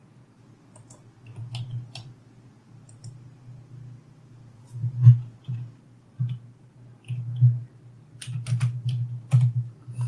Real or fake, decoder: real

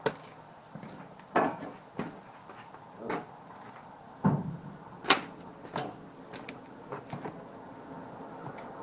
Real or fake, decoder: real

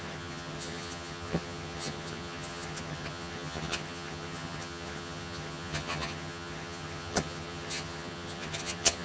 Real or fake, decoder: fake, vocoder, HiFi-GAN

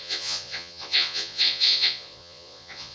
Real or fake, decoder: fake, vocoder, Vocos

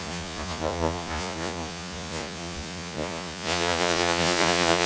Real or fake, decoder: fake, vocoder, Vocos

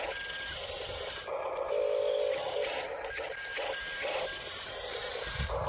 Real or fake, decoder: real